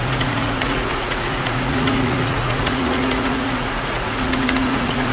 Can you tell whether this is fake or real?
fake